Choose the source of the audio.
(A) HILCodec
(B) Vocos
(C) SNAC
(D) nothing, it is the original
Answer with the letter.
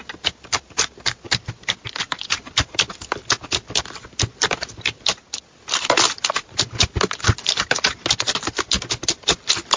D